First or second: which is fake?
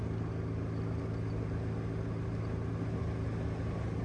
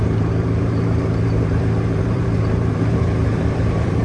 second